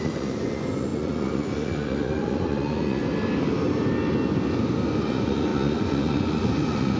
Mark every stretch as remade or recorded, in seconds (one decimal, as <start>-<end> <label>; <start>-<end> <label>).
0.0-3.0 remade; 3.0-5.0 recorded; 5.0-7.0 remade